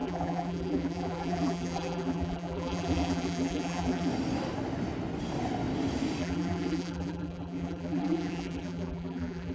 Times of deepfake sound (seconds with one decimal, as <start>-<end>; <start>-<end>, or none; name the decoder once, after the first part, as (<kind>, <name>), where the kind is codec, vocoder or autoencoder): 0.0-4.1 (vocoder, BigVGAN v2); 6.2-9.5